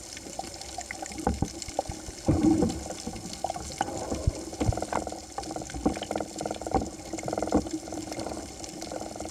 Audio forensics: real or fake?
real